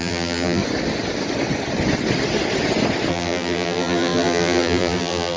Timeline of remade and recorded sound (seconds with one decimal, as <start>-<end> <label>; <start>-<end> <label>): 0.0-0.6 remade; 0.6-3.1 recorded; 3.1-5.4 remade